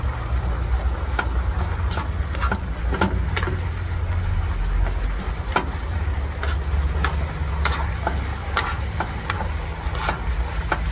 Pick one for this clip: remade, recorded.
recorded